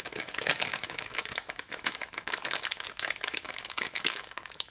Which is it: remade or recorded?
remade